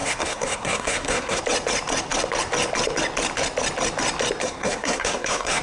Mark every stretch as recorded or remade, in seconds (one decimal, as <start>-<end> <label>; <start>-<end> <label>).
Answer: 0.0-1.4 remade; 1.4-4.4 recorded; 4.4-5.6 remade

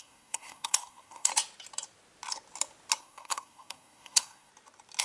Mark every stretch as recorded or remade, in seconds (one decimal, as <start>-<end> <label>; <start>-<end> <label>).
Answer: 0.0-1.3 remade; 1.3-3.0 recorded; 3.0-4.5 remade; 4.5-5.0 recorded

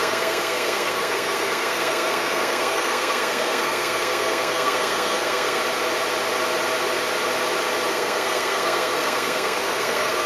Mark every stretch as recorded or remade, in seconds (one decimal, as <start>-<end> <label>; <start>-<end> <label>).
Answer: 0.0-5.6 remade; 5.6-7.9 recorded; 7.9-10.3 remade

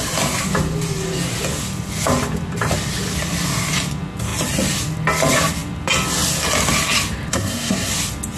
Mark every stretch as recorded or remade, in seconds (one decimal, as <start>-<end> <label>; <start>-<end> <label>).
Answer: 0.0-7.3 recorded; 7.3-7.9 remade; 7.9-8.4 recorded

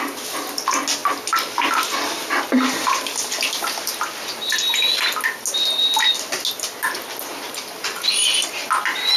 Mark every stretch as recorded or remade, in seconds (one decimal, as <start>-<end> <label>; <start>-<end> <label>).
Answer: 0.0-9.2 recorded